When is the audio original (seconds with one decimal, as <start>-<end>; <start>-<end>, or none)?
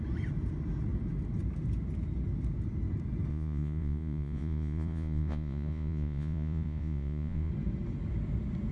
0.0-3.3; 7.5-8.7